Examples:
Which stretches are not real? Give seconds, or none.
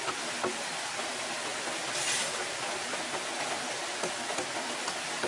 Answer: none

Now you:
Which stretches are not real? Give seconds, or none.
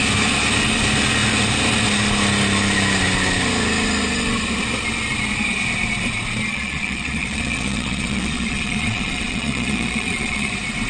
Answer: 6.5-10.5 (vocoder, Vocos)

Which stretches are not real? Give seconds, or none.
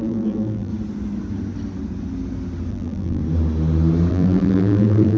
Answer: 0.0-0.7 (vocoder, BigVGAN v2); 2.7-3.2; 4.1-5.2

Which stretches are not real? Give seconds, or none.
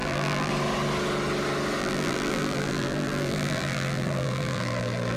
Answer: 0.0-0.5 (vocoder, BigVGAN v2); 1.8-5.2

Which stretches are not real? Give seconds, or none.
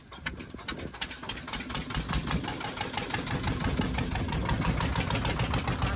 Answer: none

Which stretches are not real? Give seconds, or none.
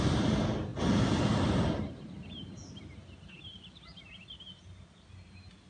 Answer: none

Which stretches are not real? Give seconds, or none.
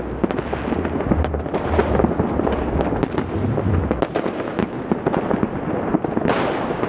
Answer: none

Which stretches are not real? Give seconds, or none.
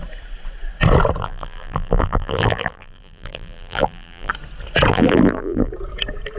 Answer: 1.2-4.3 (vocoder, BigVGAN v2); 4.9-5.7